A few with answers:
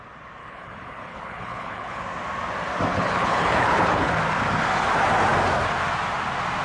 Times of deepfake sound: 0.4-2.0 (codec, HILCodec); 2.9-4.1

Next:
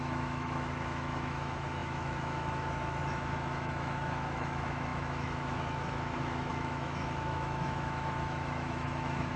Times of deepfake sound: 0.0-9.4 (autoencoder, DAC-VAE)

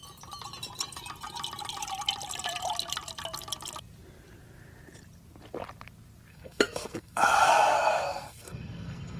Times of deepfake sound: 6.3-9.2 (codec, SNAC)

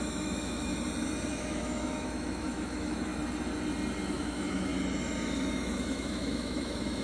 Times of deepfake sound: 0.0-0.7 (autoencoder, DAC-VAE); 1.3-3.1; 4.1-4.7; 5.5-7.0

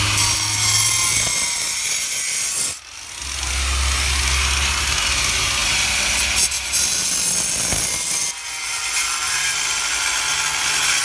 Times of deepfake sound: 2.7-3.2 (vocoder, BigVGAN v2); 8.7-9.9

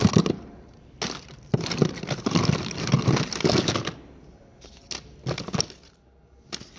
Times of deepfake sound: none